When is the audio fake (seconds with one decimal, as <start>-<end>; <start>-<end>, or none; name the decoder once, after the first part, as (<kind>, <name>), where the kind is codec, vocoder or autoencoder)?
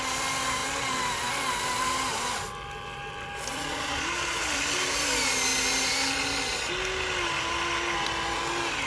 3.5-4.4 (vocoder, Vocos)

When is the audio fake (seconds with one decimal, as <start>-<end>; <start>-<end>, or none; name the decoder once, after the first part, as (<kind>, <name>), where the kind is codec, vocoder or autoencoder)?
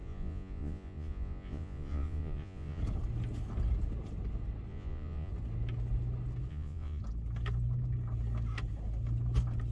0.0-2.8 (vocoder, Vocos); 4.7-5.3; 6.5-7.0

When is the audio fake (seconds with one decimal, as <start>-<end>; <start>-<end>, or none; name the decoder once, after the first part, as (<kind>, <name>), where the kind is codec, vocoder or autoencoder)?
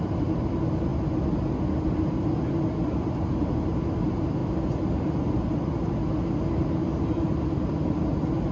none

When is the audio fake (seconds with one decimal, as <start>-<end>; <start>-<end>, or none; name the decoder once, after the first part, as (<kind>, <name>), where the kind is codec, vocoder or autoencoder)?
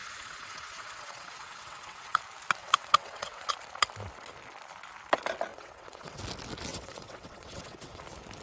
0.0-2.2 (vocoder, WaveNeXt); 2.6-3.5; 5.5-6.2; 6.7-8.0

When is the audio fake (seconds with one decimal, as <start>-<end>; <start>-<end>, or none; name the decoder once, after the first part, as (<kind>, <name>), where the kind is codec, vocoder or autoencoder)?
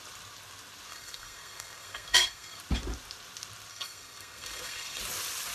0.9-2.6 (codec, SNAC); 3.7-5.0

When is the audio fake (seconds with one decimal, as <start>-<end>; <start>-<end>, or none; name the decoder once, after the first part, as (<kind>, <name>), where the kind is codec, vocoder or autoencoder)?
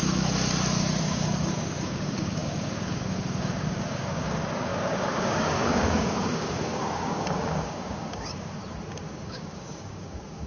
1.0-8.6 (codec, DAC); 9.1-10.5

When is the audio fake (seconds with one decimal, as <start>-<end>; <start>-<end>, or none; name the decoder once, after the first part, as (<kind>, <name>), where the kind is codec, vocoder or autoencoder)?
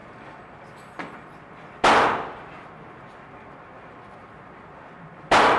none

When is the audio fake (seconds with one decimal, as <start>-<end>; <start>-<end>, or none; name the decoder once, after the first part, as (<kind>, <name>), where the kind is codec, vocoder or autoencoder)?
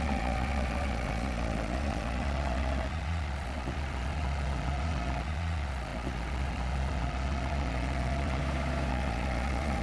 0.0-8.4 (vocoder, Vocos); 8.9-9.8